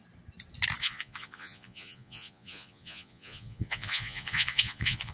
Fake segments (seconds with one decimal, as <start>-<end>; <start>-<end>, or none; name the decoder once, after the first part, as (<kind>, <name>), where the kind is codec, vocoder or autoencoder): 0.8-5.1 (vocoder, Vocos)